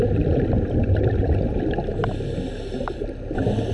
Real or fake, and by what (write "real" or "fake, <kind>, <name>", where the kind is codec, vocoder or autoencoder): real